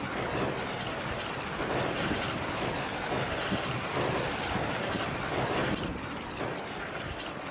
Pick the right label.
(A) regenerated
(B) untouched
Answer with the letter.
B